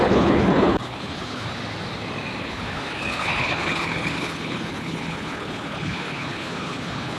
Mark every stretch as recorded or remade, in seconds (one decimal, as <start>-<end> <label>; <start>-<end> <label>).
0.0-1.6 remade; 1.6-2.4 recorded; 2.4-7.2 remade